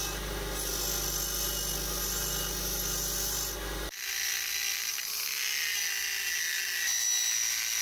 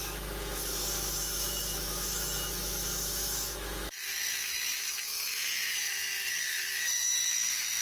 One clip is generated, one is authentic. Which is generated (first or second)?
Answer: second